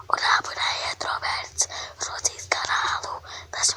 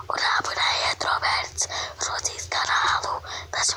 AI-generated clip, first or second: first